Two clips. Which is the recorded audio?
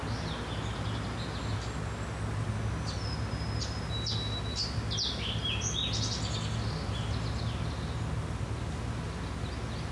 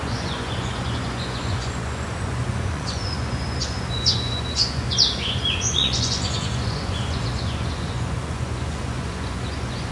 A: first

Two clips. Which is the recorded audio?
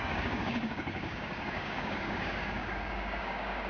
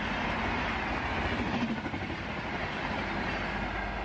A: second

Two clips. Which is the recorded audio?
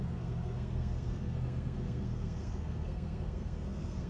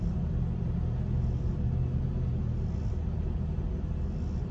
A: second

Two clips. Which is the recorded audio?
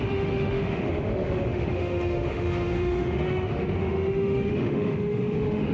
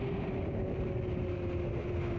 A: second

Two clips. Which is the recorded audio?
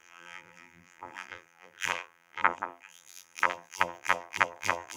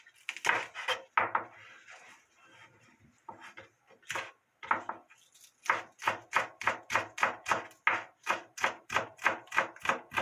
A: second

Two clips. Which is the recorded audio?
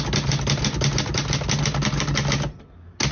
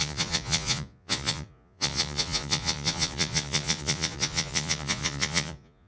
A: first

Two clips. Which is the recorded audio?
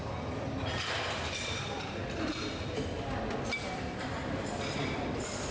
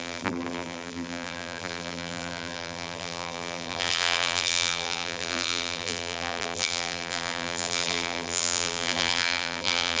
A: first